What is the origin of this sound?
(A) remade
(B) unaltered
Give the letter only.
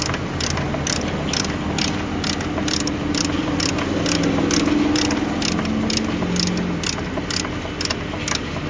B